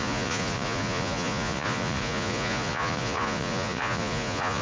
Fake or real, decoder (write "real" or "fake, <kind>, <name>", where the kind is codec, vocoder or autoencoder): fake, vocoder, Vocos